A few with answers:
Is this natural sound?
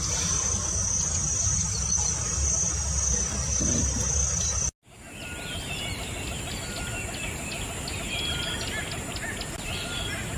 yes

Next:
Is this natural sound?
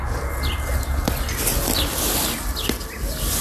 yes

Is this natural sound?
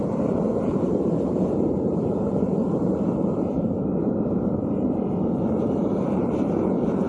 no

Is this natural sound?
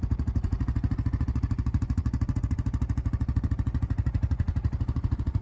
no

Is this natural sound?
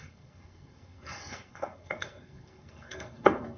no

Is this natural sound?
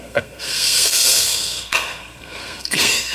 no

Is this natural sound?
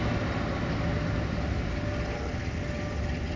yes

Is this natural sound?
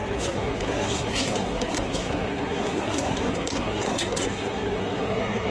no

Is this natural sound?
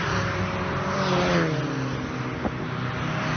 yes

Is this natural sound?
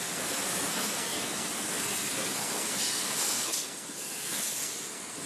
no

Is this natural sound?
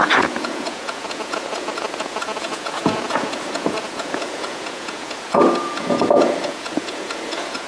no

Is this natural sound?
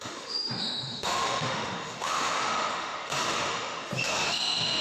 no